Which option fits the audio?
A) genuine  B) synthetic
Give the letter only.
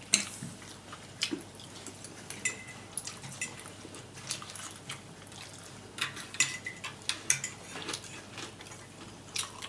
A